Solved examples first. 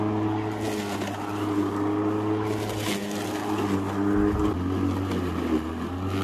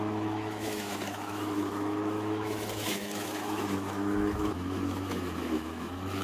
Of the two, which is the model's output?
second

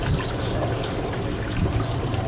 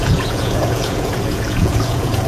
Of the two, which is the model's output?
second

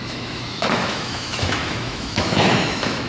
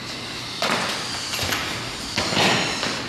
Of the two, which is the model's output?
first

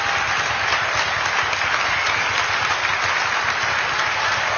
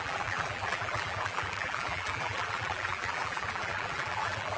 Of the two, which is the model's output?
second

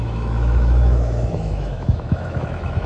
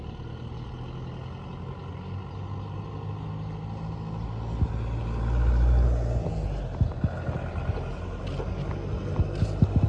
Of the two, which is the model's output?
first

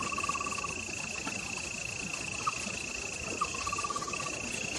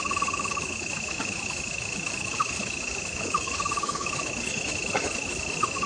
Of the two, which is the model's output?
second